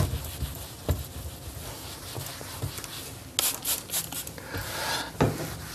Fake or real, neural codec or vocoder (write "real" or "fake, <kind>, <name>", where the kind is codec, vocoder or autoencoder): real